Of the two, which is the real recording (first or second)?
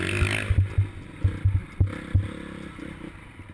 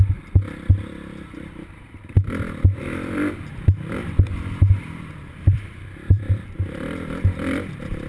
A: first